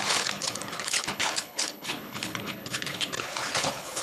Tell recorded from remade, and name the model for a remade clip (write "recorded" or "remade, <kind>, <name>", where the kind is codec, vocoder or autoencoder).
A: remade, codec, HILCodec